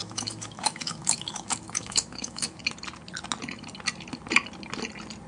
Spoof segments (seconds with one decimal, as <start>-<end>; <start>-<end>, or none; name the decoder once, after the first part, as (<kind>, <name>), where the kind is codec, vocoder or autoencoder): 0.0-2.6 (autoencoder, DAC-VAE)